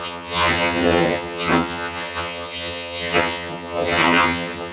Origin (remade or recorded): remade